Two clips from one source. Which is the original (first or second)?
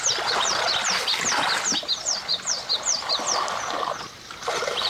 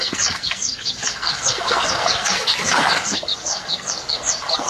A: first